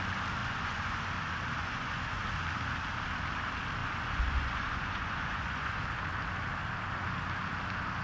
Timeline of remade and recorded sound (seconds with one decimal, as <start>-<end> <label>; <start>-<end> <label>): 0.0-0.4 recorded; 0.4-1.1 remade; 1.1-1.6 recorded; 1.6-2.2 remade; 2.2-3.8 recorded; 3.8-5.8 remade; 5.8-8.0 recorded